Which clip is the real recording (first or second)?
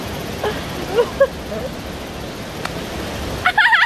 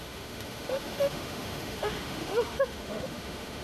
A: first